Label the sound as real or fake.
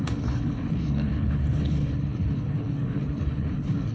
fake